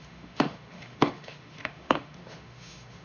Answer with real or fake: fake